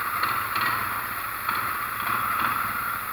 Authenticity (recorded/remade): recorded